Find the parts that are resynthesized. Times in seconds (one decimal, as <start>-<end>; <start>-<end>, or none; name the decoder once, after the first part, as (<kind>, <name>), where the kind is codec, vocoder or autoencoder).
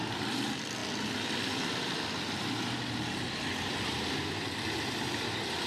0.8-4.1 (vocoder, BigVGAN v2)